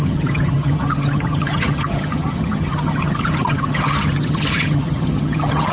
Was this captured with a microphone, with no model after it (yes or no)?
no